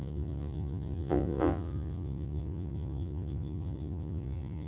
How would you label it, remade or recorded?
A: remade